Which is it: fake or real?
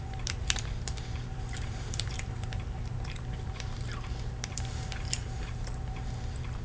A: fake